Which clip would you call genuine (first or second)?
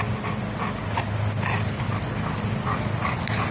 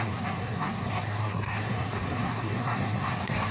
first